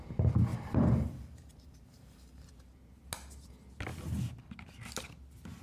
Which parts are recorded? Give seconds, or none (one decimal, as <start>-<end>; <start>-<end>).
0.0-0.5; 2.5-5.6